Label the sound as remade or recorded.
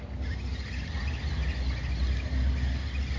recorded